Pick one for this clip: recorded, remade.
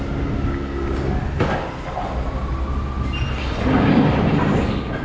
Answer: recorded